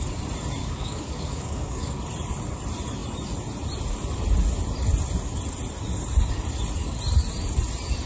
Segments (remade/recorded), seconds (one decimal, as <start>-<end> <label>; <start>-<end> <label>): 0.0-0.6 recorded; 0.6-2.0 remade; 2.0-8.1 recorded